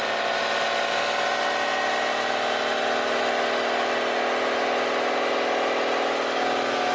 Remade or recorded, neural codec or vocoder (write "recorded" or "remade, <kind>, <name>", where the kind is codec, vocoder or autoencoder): recorded